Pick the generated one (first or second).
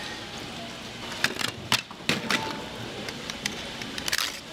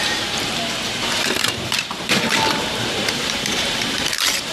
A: second